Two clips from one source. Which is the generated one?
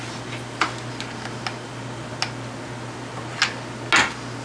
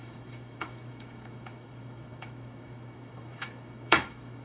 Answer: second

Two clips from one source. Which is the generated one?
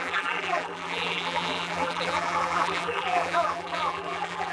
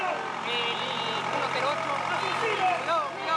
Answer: first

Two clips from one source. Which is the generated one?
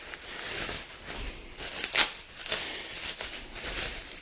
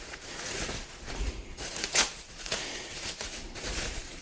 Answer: second